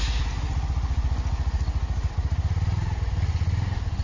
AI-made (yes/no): no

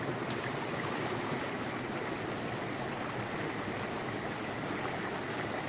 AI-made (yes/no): no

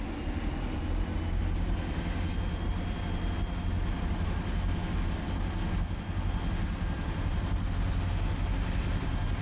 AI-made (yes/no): no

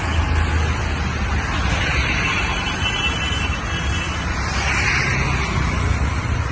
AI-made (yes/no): no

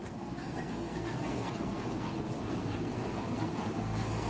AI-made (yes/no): yes